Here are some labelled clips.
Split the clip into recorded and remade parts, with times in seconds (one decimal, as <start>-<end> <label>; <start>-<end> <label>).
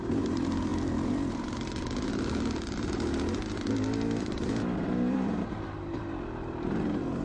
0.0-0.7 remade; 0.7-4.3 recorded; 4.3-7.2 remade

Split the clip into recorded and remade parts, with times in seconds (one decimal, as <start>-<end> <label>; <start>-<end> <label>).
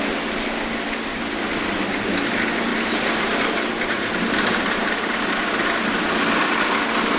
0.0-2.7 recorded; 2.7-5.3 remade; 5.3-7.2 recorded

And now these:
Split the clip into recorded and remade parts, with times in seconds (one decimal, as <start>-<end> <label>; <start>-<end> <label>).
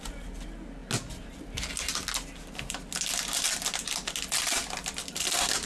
0.0-5.7 recorded